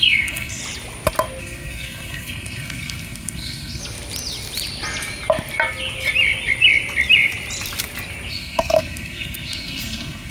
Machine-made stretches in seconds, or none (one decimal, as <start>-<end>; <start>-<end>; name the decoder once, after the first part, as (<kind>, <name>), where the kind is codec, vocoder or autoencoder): 0.0-0.6 (codec, SNAC); 1.4-3.8; 8.3-10.3